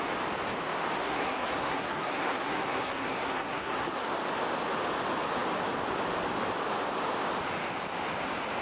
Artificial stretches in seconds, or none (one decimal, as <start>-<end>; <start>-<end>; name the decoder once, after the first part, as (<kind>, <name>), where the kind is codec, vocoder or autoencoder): 1.0-4.1 (codec, SNAC)

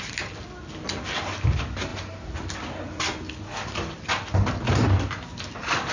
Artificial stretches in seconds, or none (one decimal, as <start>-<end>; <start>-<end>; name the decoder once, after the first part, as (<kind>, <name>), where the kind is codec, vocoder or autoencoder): none

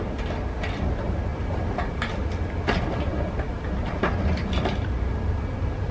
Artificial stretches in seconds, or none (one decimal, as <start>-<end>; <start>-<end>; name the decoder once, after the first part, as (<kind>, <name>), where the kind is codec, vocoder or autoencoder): none

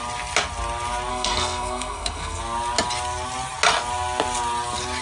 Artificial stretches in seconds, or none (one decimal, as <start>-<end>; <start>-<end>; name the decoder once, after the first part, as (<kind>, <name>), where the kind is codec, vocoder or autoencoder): 1.1-2.4 (codec, SNAC)

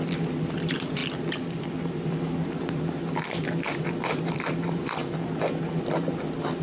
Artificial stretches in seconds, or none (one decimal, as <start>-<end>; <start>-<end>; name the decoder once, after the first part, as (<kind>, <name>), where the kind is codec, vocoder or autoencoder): 0.0-1.0 (vocoder, BigVGAN v2); 4.3-5.0